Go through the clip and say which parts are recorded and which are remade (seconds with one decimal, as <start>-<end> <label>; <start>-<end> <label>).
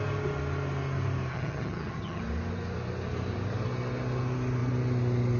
0.0-1.3 recorded; 1.3-2.2 remade; 2.2-5.4 recorded